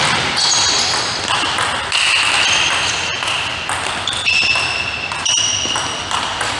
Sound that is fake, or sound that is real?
real